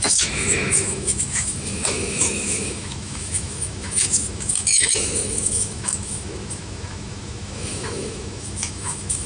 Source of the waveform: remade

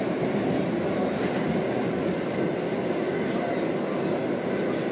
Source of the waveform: recorded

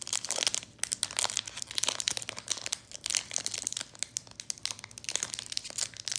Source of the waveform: recorded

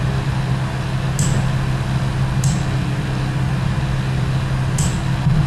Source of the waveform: recorded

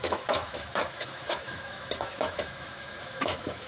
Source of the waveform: remade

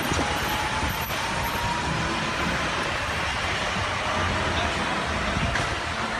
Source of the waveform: recorded